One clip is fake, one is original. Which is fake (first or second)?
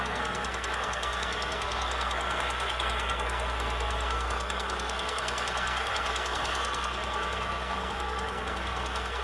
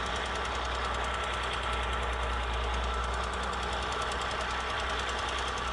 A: first